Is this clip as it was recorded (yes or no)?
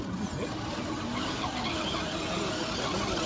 yes